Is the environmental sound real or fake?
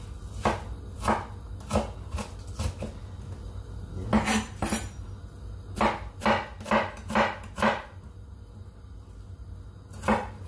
real